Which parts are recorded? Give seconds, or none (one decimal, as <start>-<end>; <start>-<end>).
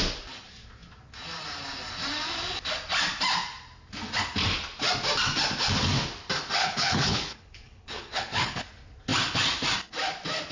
0.0-6.6; 8.6-10.5